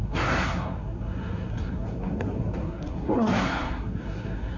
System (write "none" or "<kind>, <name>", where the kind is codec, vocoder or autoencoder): codec, SNAC